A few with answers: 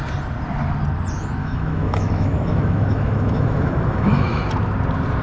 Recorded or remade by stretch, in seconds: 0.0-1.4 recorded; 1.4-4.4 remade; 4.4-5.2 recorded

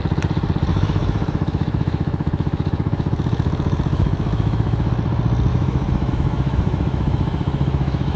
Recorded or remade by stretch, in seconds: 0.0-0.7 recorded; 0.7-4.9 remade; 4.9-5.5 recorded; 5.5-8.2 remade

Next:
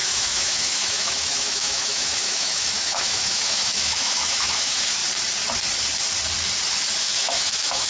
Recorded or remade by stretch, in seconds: 0.0-5.0 remade; 5.0-7.0 recorded; 7.0-7.9 remade

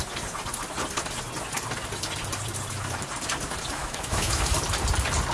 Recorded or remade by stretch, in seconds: 0.0-3.8 recorded; 3.8-4.5 remade; 4.5-5.3 recorded

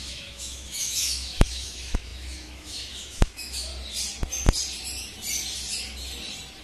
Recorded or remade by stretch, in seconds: 0.0-3.7 remade; 3.7-6.6 recorded

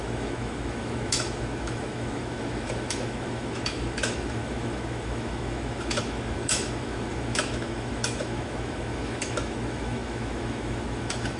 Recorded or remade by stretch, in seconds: 0.0-11.4 remade

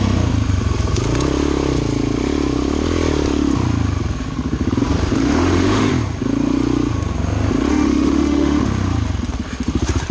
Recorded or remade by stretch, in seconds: 0.0-5.1 recorded; 5.1-5.9 remade; 5.9-7.7 recorded; 7.7-8.7 remade; 8.7-10.1 recorded

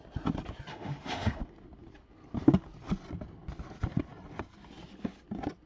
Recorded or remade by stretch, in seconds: 0.0-0.7 recorded; 0.7-1.4 remade; 1.4-5.7 recorded